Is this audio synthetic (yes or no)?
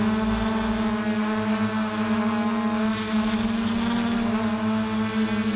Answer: no